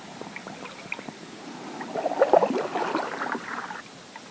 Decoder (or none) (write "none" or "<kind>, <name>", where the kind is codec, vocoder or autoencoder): none